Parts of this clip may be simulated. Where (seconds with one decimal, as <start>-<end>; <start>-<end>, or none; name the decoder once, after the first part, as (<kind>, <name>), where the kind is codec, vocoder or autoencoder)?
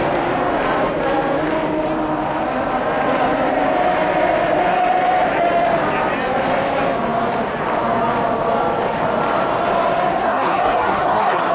10.2-11.5 (codec, SNAC)